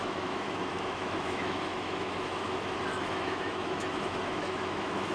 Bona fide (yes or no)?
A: no